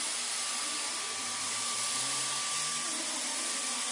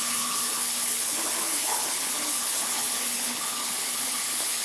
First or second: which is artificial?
second